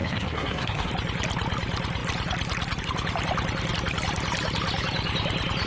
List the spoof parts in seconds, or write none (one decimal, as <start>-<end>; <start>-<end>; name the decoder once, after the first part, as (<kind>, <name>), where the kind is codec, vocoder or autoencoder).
0.0-0.9 (codec, SNAC)